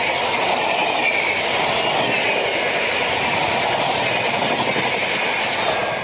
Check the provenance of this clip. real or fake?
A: real